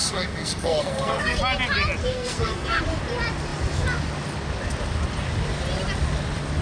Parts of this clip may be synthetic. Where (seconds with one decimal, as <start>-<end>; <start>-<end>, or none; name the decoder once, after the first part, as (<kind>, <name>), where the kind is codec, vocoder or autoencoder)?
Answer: 0.0-1.4 (codec, SNAC); 2.0-2.8